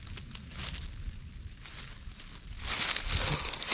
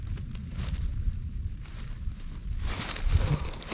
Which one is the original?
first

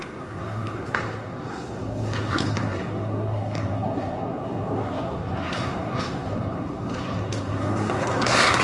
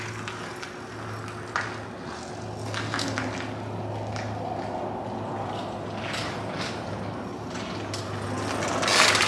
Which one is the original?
second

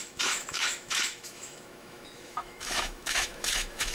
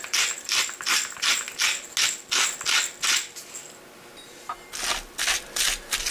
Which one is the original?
second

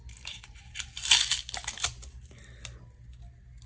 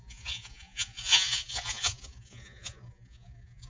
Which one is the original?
first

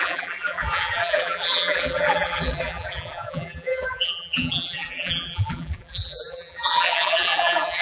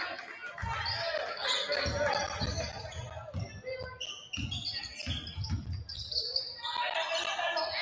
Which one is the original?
second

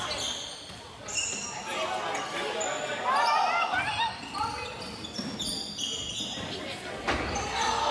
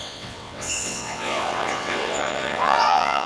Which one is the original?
first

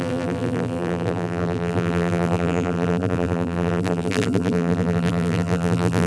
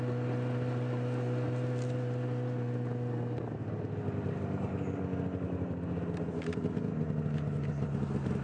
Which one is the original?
second